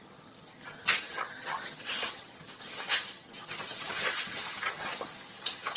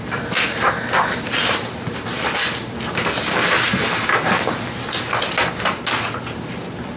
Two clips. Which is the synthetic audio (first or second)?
first